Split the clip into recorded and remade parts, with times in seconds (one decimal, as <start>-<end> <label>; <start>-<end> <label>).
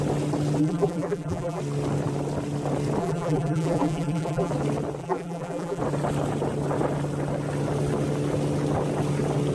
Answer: 0.0-0.6 recorded; 0.6-1.6 remade; 1.6-3.0 recorded; 3.0-4.5 remade; 4.5-5.0 recorded; 5.0-5.8 remade; 5.8-9.5 recorded